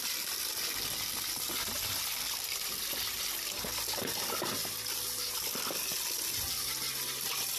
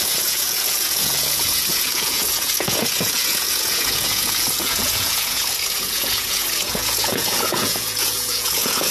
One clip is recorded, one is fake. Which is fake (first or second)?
second